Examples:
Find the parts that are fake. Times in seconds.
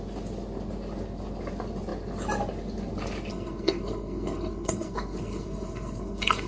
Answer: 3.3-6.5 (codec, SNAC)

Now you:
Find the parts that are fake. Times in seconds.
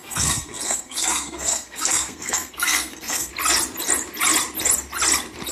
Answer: 0.0-3.3 (codec, SNAC)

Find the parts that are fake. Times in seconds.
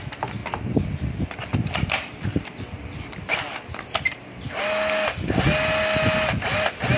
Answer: none